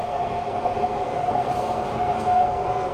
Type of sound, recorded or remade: remade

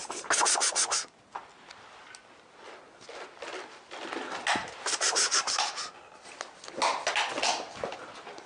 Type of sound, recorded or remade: recorded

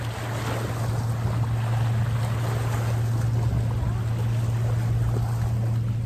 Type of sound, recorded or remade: recorded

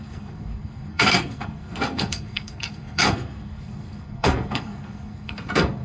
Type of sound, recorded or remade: remade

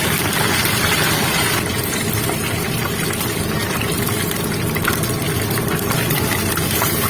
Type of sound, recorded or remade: recorded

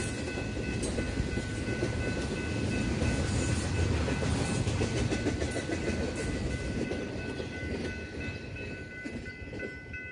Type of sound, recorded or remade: recorded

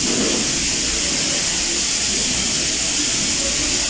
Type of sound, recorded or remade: recorded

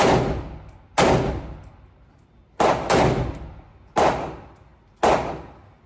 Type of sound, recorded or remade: recorded